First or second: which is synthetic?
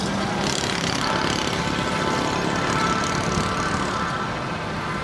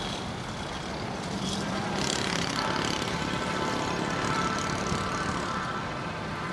second